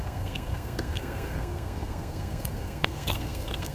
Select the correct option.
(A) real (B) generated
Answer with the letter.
B